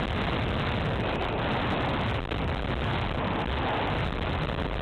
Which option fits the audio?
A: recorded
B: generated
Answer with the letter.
A